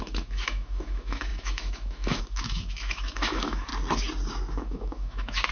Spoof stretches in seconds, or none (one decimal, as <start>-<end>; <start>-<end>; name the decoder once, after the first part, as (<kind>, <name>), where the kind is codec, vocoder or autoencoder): 0.0-3.7 (autoencoder, DAC-VAE); 4.5-5.5